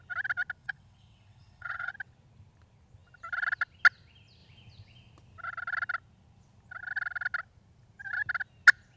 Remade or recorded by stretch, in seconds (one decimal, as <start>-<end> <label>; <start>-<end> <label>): 0.0-0.6 recorded; 0.6-1.9 remade; 1.9-9.0 recorded